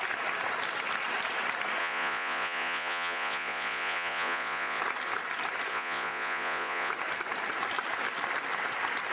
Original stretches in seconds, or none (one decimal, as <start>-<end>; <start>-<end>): 0.0-1.8; 4.8-5.7; 6.9-9.1